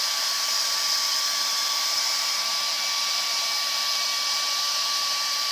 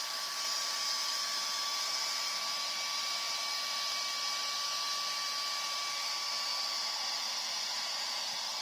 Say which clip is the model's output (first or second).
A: first